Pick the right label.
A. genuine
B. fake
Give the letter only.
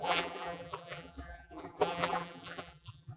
B